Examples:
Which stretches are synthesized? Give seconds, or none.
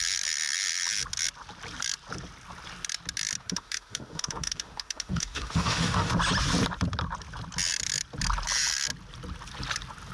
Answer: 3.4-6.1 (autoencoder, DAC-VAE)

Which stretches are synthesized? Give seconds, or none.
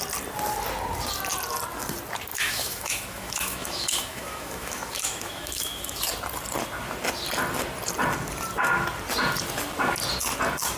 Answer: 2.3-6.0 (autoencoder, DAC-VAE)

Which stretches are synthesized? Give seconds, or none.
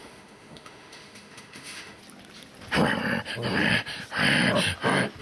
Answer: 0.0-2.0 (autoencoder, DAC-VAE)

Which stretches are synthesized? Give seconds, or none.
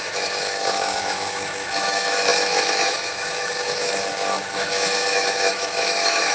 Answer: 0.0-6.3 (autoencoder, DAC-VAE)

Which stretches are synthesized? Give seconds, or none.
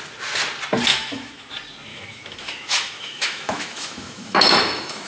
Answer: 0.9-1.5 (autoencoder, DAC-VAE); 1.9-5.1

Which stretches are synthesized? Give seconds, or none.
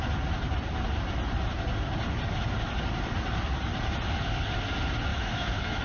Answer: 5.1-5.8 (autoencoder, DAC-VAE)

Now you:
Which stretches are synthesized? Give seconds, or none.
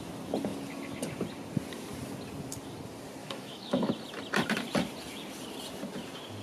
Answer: 3.2-3.9 (autoencoder, DAC-VAE)